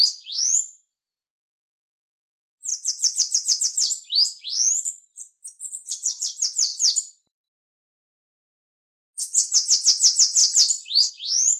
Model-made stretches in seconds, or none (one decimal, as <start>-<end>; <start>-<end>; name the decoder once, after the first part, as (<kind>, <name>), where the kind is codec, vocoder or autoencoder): 2.7-3.6 (vocoder, BigVGAN v2); 6.7-8.7; 10.4-11.1